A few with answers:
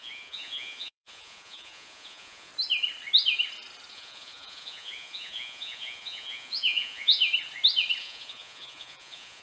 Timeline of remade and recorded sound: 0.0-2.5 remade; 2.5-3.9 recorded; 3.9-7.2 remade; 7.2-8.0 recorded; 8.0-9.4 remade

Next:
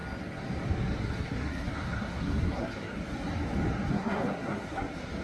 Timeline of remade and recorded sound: 0.0-1.0 recorded; 1.0-3.0 remade; 3.0-3.9 recorded; 3.9-5.2 remade

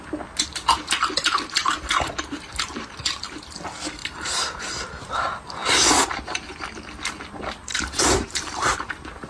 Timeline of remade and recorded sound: 0.0-1.6 recorded; 1.6-2.9 remade; 2.9-4.0 recorded; 4.0-5.1 remade; 5.1-7.7 recorded; 7.7-8.9 remade; 8.9-9.3 recorded

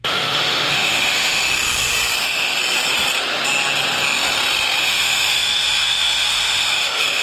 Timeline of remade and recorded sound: 0.0-1.4 remade; 1.4-2.2 recorded; 2.2-2.6 remade; 2.6-4.8 recorded; 4.8-7.2 remade

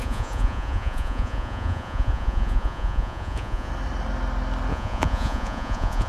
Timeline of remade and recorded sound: 0.0-3.7 remade; 3.7-4.7 recorded; 4.7-6.1 remade

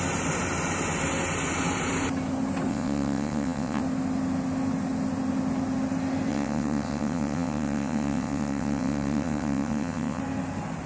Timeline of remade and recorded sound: 0.0-2.7 recorded; 2.7-3.8 remade; 3.8-6.3 recorded; 6.3-10.2 remade; 10.2-10.9 recorded

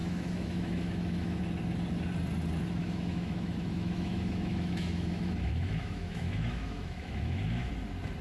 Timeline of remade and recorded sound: 0.0-1.4 remade; 1.4-2.8 recorded; 2.8-7.7 remade; 7.7-8.2 recorded